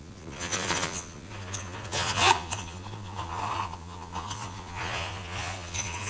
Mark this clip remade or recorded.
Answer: remade